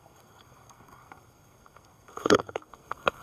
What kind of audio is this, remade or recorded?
remade